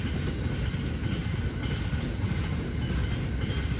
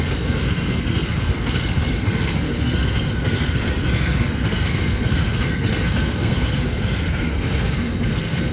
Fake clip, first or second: second